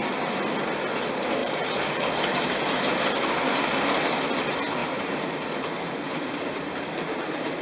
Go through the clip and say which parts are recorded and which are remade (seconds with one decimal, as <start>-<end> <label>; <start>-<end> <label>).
0.0-1.4 recorded; 1.4-3.3 remade; 3.3-4.8 recorded; 4.8-7.6 remade